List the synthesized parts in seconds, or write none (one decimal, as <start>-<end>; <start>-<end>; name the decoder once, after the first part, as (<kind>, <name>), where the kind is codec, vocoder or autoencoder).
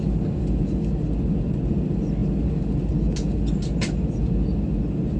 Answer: none